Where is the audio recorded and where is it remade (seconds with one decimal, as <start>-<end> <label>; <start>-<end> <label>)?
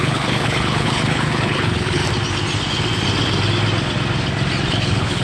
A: 0.0-2.0 remade; 2.0-4.7 recorded; 4.7-5.2 remade